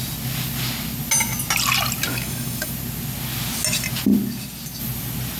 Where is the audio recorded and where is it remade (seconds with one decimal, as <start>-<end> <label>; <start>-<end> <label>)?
0.0-2.1 recorded; 2.1-2.7 remade; 2.7-5.4 recorded